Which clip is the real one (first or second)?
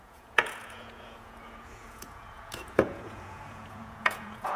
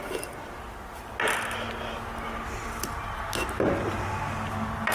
second